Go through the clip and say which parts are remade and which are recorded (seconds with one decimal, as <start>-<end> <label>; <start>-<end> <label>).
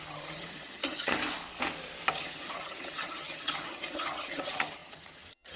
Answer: 0.0-1.2 remade; 1.2-2.1 recorded; 2.1-5.6 remade